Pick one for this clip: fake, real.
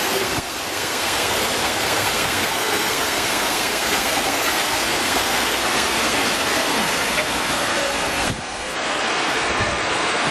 fake